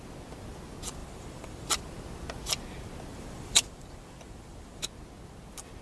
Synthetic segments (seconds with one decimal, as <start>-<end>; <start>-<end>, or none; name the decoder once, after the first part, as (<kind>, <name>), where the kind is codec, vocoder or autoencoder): 1.0-1.8 (vocoder, BigVGAN v2); 3.1-4.8